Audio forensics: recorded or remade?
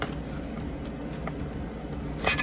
recorded